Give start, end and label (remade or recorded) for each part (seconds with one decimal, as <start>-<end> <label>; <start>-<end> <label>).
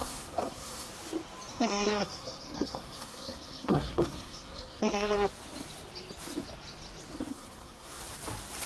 0.0-0.9 remade; 0.9-1.5 recorded; 1.5-5.3 remade; 5.3-7.3 recorded; 7.3-8.0 remade; 8.0-8.7 recorded